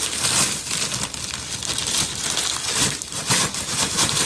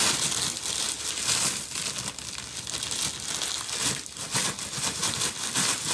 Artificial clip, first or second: first